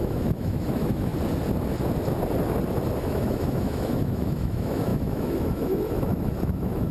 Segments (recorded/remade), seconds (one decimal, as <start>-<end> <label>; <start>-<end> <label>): 0.0-1.1 remade; 1.1-3.0 recorded; 3.0-6.9 remade